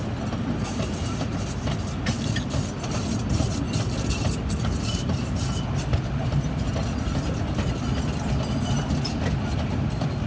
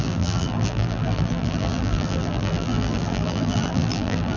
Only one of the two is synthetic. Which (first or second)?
second